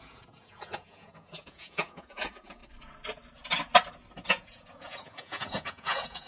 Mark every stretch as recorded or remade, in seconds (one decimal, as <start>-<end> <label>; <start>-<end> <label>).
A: 0.0-2.6 remade; 2.6-4.3 recorded; 4.3-6.3 remade